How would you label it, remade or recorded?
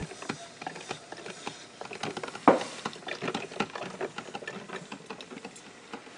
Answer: recorded